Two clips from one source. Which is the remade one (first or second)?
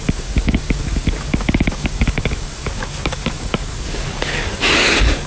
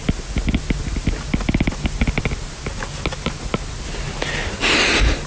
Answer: first